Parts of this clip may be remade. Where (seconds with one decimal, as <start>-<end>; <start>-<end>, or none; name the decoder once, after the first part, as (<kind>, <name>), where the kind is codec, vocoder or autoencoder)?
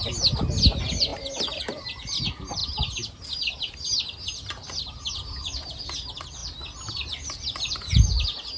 none